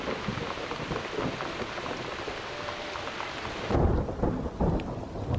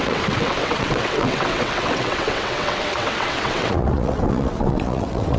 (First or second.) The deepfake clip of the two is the second